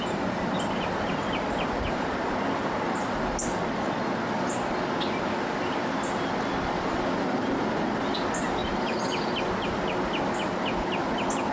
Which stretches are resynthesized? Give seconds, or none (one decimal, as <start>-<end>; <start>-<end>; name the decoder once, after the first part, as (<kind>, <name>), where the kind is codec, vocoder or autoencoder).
none